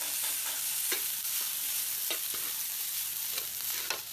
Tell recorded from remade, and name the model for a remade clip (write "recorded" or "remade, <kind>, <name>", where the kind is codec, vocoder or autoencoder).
recorded